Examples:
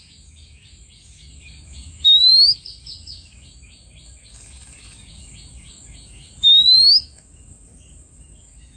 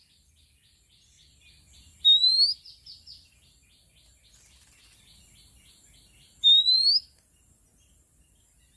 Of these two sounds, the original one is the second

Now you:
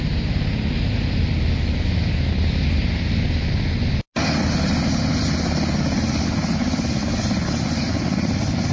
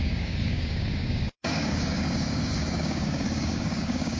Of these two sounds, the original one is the first